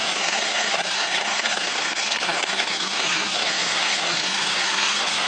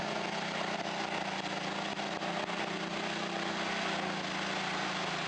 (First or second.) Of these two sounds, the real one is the second